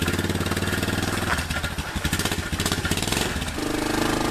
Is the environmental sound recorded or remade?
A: recorded